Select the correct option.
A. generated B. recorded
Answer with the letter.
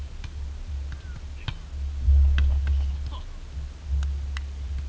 B